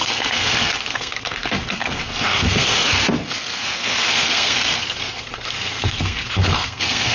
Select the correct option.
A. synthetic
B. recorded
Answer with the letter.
A